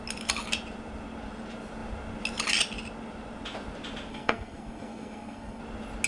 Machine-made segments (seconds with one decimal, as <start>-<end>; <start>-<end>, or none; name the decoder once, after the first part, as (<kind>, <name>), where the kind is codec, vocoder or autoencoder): 4.1-5.6 (codec, SNAC)